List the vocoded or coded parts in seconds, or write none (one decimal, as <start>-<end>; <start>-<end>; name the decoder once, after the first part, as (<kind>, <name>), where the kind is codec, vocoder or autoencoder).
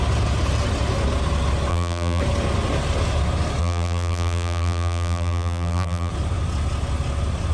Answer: 1.7-2.2 (vocoder, BigVGAN v2); 3.6-6.1